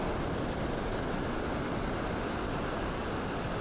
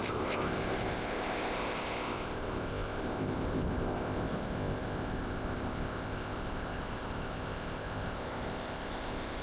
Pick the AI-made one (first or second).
second